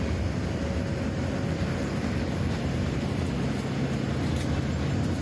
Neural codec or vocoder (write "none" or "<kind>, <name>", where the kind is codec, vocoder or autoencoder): none